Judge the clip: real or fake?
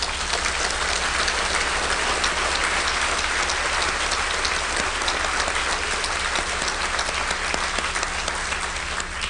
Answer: real